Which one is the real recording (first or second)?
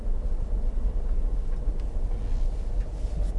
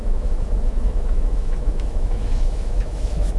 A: first